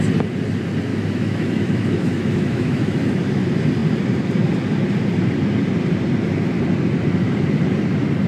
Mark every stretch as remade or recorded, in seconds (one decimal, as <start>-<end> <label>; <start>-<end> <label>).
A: 0.0-0.9 recorded; 0.9-3.2 remade; 3.2-8.3 recorded